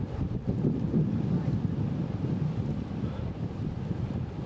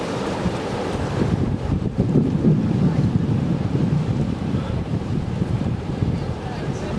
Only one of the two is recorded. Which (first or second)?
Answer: first